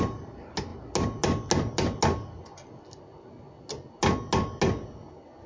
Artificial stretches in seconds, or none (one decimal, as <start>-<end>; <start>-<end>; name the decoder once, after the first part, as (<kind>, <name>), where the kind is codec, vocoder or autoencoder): none